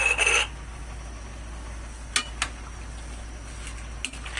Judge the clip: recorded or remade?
recorded